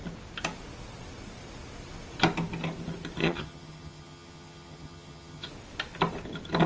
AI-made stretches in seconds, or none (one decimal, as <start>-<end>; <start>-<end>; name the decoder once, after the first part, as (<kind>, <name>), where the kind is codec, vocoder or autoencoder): 3.2-5.5 (vocoder, HiFi-GAN)